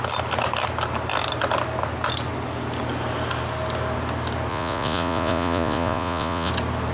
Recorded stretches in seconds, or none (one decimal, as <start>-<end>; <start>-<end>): 0.0-4.5; 6.5-6.9